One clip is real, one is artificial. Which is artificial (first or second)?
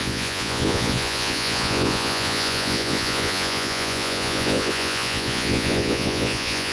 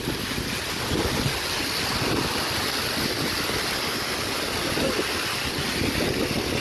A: first